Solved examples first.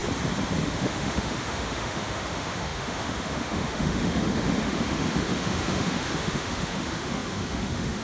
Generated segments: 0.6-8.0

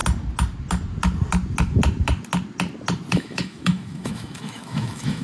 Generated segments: 3.1-5.2